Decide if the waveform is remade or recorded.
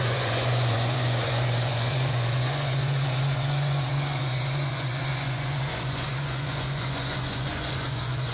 remade